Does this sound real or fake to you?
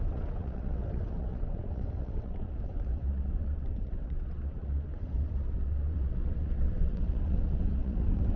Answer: fake